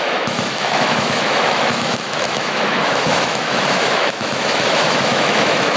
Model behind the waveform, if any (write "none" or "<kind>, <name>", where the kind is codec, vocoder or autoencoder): autoencoder, DAC-VAE